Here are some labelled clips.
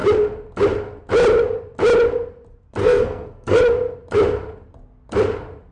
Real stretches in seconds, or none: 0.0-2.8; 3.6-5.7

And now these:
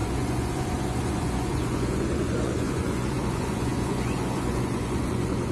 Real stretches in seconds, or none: none

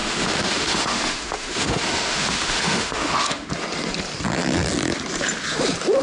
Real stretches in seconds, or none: 3.5-6.0

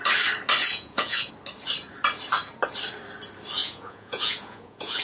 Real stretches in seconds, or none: 0.0-0.6; 1.3-3.6